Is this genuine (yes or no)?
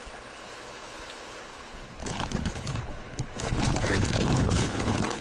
no